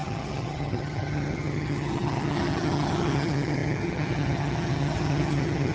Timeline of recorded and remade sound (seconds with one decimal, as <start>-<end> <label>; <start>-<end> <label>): 0.0-5.7 remade

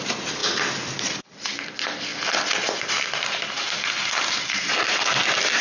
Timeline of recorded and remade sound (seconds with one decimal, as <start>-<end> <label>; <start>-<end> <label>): 0.0-5.6 recorded

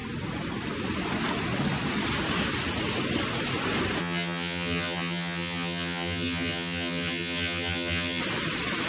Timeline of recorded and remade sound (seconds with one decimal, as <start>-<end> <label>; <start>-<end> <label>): 0.0-4.0 recorded; 4.0-8.2 remade; 8.2-8.9 recorded

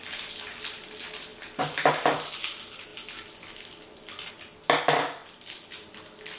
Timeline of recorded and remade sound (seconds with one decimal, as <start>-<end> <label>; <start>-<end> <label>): 0.0-6.4 recorded